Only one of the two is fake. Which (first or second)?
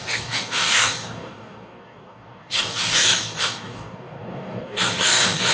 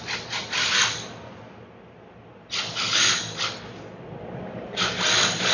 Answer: first